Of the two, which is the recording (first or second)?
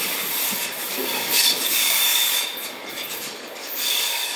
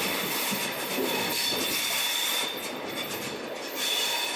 second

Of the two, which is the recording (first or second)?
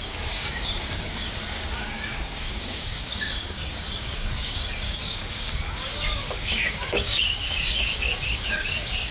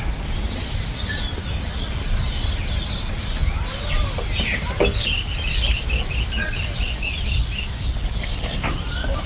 second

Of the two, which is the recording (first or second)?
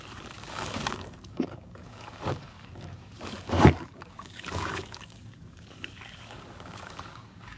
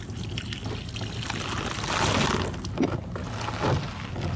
second